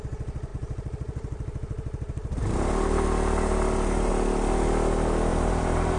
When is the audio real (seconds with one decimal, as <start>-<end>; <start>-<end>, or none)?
0.0-0.5; 4.1-5.3